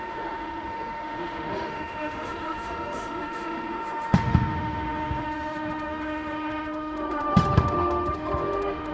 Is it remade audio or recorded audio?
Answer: remade